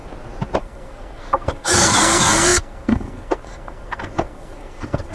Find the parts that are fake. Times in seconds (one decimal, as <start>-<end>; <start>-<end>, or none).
0.6-5.1